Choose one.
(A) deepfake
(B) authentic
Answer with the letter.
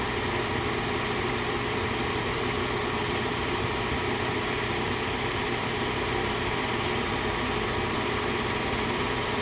B